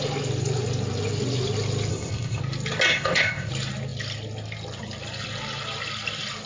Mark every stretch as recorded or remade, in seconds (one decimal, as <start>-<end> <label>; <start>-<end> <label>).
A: 0.0-1.9 recorded; 1.9-2.4 remade; 2.4-2.9 recorded; 2.9-3.5 remade; 3.5-6.5 recorded